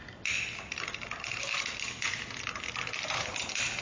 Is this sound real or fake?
real